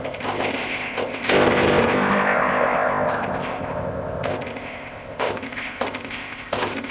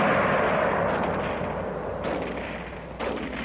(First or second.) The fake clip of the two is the first